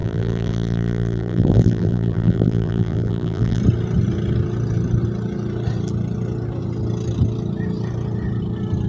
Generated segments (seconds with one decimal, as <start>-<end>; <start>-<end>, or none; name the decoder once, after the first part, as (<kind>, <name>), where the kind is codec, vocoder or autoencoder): 0.0-3.6 (vocoder, BigVGAN v2)